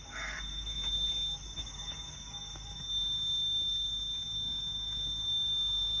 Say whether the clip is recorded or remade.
remade